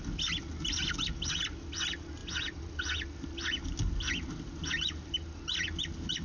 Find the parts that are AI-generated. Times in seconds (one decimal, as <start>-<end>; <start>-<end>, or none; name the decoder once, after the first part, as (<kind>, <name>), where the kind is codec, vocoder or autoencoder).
none